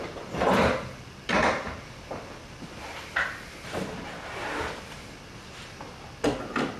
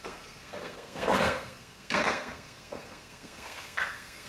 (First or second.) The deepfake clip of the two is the second